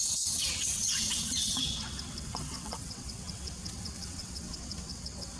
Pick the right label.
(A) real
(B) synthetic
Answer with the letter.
B